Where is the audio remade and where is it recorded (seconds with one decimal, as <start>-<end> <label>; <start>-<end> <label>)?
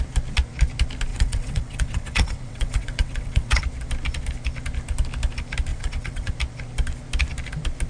0.0-1.1 recorded; 1.1-3.6 remade; 3.6-5.7 recorded; 5.7-6.3 remade; 6.3-7.9 recorded